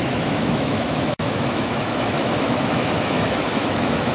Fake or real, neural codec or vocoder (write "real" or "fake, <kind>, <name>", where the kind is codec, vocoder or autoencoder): fake, autoencoder, DAC-VAE